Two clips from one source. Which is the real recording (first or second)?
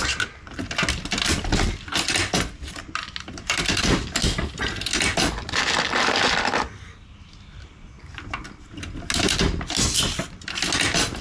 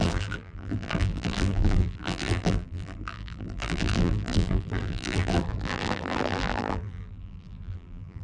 first